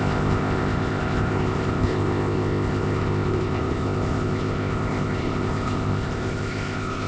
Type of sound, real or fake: fake